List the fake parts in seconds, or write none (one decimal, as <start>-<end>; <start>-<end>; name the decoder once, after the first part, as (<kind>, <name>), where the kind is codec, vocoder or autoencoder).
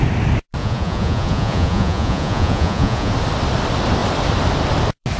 0.6-3.1 (vocoder, Vocos)